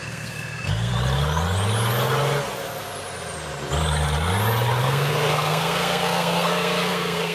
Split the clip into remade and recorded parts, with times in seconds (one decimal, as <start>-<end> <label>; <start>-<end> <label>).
0.0-0.9 remade; 0.9-4.8 recorded; 4.8-7.3 remade